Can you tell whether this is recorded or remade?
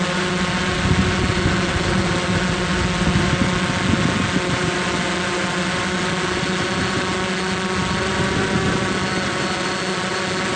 recorded